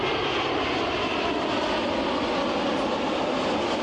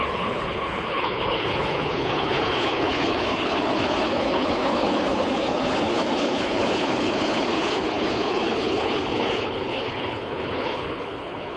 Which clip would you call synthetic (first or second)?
second